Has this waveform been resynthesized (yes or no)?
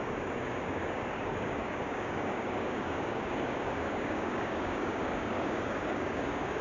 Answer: yes